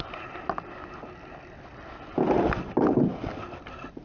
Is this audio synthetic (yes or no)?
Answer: no